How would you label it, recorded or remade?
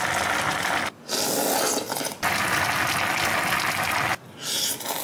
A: recorded